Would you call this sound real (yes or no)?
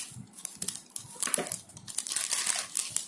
yes